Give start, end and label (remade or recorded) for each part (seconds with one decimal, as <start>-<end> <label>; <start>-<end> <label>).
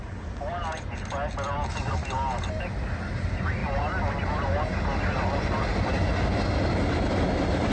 0.0-7.7 recorded